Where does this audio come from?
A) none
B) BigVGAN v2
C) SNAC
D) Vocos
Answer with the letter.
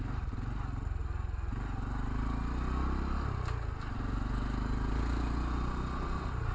A